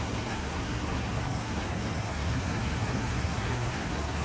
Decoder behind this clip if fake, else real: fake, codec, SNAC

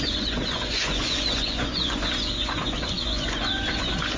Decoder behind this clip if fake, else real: fake, vocoder, Vocos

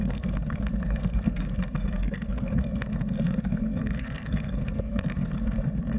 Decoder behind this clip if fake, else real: fake, codec, SNAC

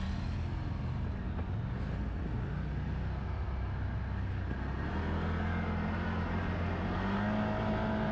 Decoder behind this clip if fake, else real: real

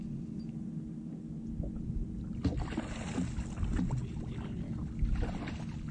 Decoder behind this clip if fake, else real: real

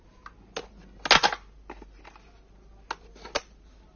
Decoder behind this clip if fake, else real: real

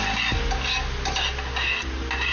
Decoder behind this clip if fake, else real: real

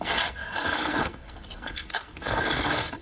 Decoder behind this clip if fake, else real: fake, codec, SNAC